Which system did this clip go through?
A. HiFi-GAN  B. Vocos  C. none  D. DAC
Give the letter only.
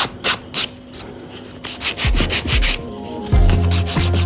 C